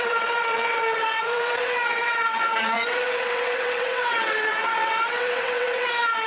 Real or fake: fake